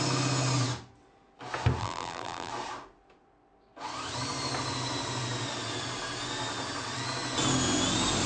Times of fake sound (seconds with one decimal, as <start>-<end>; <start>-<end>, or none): 1.8-2.5